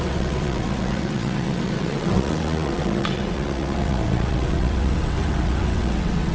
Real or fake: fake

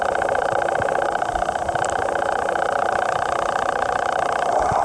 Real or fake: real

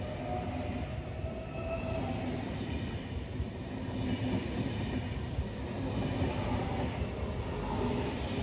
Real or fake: real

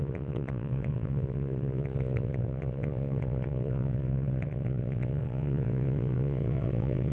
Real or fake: fake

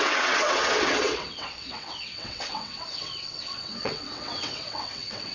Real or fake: fake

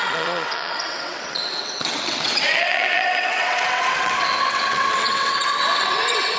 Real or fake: fake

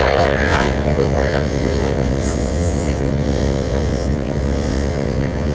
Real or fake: fake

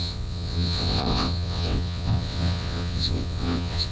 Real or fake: fake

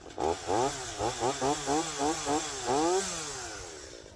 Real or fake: real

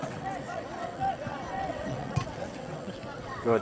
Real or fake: fake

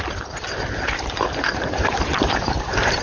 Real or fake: real